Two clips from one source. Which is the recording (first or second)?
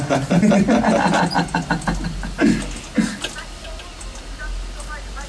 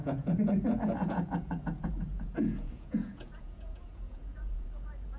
first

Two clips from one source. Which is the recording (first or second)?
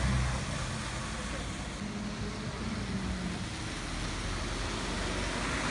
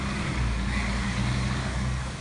first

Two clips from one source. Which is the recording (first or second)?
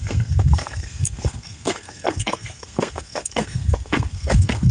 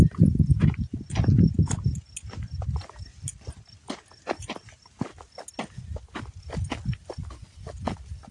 second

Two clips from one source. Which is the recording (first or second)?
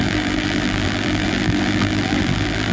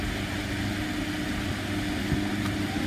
second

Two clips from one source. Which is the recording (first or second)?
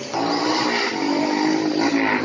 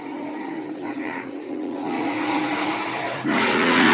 first